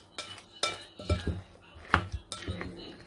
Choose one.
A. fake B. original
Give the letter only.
B